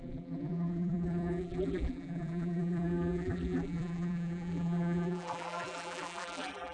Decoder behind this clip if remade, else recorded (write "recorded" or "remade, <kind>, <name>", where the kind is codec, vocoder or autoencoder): remade, vocoder, BigVGAN v2